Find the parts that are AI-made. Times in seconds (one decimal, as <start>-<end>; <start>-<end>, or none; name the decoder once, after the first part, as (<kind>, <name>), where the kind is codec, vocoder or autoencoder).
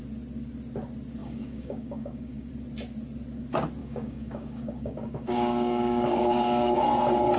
1.2-2.5 (codec, DAC); 3.8-6.8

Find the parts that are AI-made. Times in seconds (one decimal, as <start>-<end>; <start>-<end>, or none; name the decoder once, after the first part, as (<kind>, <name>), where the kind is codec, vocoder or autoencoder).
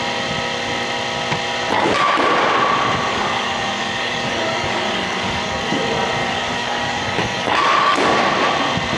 3.1-5.8 (codec, DAC); 6.2-8.2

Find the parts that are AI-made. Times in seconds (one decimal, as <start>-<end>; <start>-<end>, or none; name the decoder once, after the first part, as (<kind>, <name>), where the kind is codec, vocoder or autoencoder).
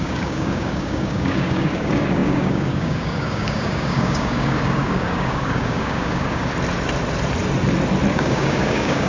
0.0-6.5 (codec, DAC); 8.1-9.1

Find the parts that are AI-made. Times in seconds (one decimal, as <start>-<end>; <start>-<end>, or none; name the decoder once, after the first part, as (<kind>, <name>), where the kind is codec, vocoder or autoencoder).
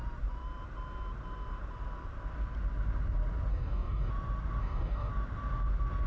3.5-4.1 (codec, DAC); 4.6-5.1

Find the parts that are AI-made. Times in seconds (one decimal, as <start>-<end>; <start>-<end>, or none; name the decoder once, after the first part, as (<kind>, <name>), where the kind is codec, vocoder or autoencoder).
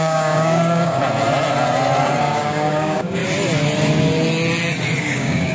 0.0-1.0 (codec, DAC); 2.2-3.2; 5.0-5.5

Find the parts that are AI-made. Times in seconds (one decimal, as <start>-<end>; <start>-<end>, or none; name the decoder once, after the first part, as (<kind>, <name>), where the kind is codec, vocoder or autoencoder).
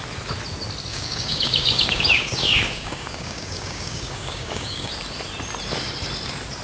0.9-4.9 (codec, DAC)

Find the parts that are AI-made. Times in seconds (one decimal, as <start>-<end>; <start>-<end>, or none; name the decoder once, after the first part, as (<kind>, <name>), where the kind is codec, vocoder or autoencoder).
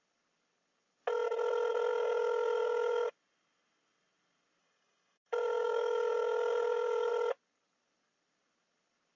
1.9-3.1 (codec, DAC); 4.6-7.1